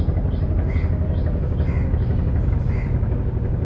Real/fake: real